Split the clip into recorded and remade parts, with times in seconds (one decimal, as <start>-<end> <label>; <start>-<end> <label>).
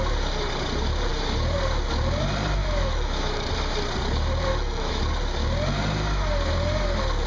0.0-2.6 recorded; 2.6-3.5 remade; 3.5-4.5 recorded; 4.5-5.0 remade; 5.0-7.3 recorded